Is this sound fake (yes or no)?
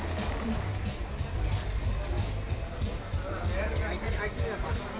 no